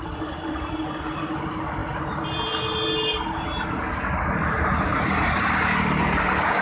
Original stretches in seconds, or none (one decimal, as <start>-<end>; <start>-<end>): 0.0-6.6